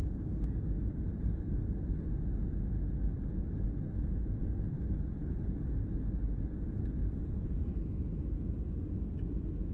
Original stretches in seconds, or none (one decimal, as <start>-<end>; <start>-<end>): 0.0-9.7